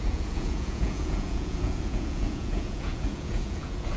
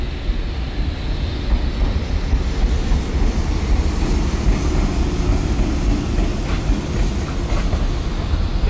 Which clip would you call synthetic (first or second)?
first